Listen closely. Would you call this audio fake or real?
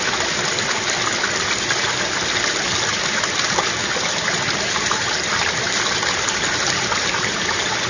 real